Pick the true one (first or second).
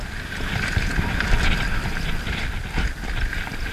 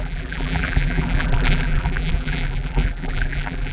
first